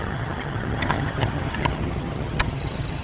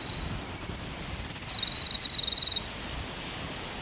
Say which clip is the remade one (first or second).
first